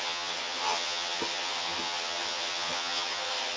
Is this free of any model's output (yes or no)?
no